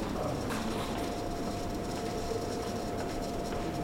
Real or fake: fake